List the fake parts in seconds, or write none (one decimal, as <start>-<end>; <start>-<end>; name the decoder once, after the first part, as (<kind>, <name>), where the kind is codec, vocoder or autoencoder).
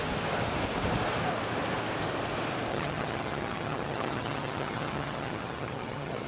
2.7-6.3 (vocoder, HiFi-GAN)